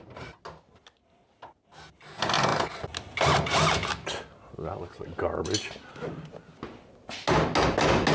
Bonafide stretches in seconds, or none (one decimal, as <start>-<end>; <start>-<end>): 0.0-8.1